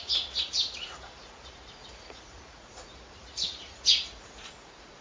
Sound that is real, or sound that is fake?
fake